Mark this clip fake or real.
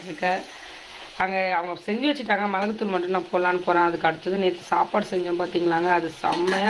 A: fake